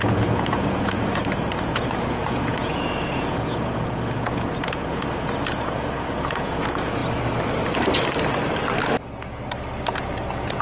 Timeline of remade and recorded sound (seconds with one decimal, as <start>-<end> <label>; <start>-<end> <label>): 0.0-1.2 remade; 1.2-1.7 recorded; 1.7-7.0 remade; 7.0-9.9 recorded; 9.9-10.6 remade